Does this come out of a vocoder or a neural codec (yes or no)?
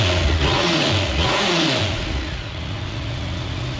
yes